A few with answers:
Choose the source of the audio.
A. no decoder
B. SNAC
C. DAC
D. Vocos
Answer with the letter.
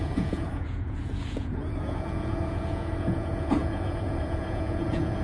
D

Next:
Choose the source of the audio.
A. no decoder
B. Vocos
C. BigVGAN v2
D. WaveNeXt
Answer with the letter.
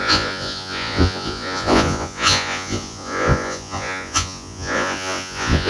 B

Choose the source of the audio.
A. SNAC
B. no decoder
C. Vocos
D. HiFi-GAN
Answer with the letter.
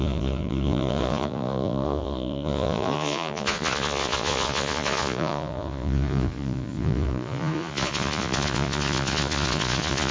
C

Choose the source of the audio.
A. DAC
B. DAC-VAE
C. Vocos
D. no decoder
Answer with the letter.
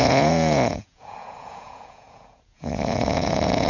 C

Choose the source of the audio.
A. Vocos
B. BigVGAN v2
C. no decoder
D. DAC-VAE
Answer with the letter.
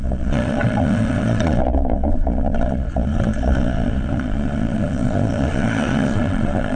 A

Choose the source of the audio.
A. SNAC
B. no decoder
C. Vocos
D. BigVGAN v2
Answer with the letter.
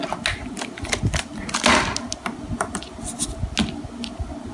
B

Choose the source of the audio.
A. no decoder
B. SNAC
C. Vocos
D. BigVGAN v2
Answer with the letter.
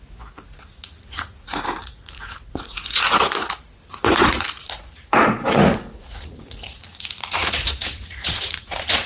C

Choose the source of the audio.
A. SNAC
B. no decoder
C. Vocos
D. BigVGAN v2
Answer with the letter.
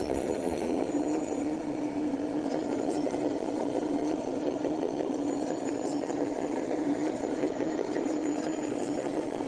C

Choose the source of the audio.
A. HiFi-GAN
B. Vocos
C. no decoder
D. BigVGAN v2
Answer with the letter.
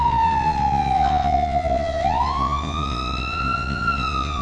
B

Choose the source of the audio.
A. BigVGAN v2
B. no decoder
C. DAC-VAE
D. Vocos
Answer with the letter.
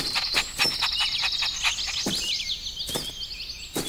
B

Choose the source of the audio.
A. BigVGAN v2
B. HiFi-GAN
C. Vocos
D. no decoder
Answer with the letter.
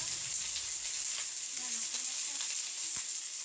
D